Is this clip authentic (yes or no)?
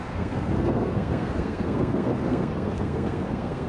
no